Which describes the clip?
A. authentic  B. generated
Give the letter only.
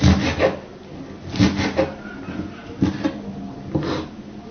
A